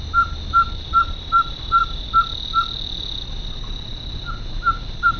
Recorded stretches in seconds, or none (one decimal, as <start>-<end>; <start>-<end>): 0.0-5.2